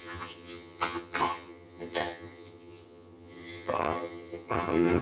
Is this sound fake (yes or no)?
yes